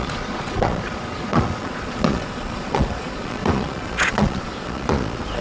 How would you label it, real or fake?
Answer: fake